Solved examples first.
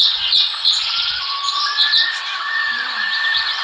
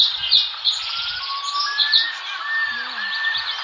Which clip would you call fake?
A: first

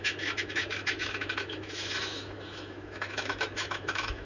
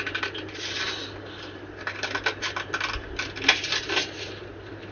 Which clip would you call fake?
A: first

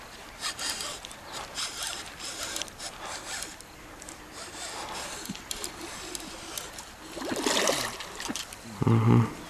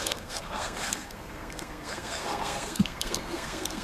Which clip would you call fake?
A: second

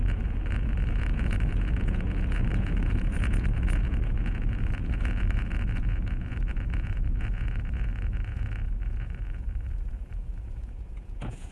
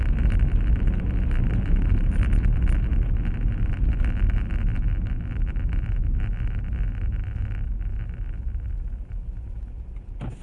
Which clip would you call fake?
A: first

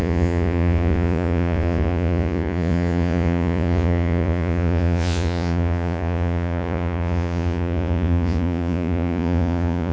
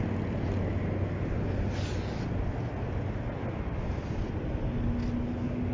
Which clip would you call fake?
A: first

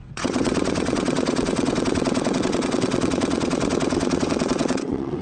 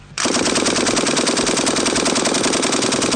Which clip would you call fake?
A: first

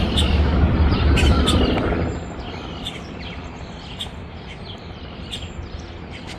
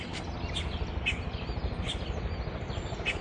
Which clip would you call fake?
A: first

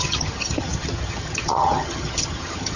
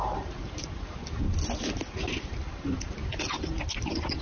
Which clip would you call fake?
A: first